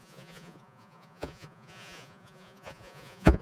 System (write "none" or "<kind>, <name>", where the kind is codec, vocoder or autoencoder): vocoder, Vocos